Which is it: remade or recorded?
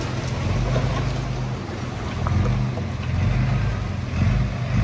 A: recorded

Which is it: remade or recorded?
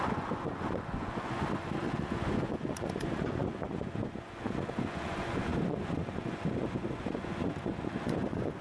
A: remade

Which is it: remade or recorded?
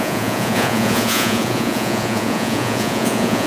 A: remade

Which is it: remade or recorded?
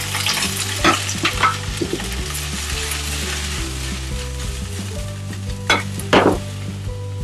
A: recorded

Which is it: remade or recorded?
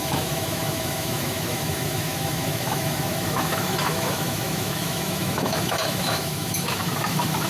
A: remade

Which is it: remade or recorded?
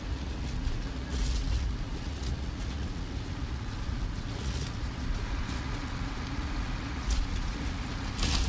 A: remade